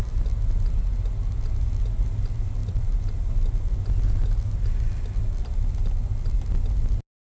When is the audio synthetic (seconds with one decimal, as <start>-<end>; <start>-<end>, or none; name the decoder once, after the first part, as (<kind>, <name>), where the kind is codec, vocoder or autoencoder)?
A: 2.6-3.2 (vocoder, BigVGAN v2)